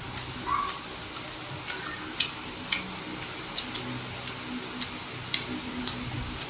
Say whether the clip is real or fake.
real